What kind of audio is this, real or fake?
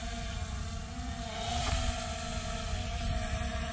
real